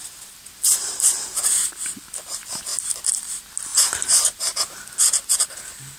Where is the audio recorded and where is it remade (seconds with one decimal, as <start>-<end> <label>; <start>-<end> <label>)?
0.0-0.8 recorded; 0.8-1.6 remade; 1.6-2.7 recorded; 2.7-3.3 remade; 3.3-3.7 recorded; 3.7-4.8 remade; 4.8-6.0 recorded